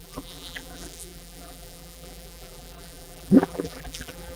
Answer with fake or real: fake